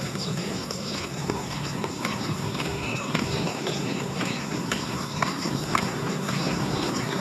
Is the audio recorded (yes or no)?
no